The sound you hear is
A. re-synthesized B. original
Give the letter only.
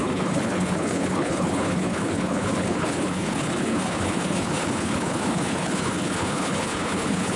A